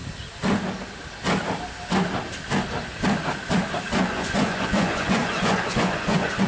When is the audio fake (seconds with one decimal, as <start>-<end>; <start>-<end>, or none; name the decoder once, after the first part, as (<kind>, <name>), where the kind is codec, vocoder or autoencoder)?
3.9-6.5 (vocoder, Vocos)